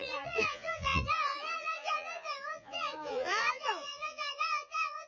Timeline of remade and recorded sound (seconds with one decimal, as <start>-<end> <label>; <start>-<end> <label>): 0.0-5.1 remade